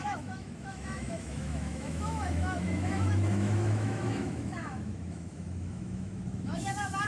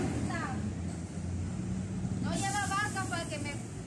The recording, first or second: second